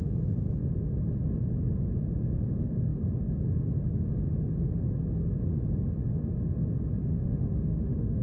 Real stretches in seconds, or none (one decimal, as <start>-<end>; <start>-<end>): 0.0-7.0